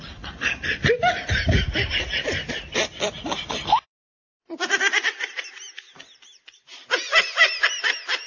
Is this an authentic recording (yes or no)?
no